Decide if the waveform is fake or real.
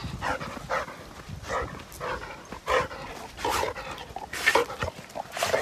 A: real